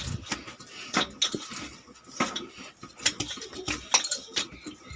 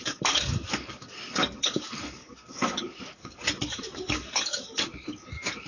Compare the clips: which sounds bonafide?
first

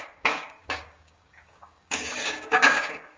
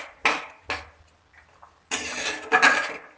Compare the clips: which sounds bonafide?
second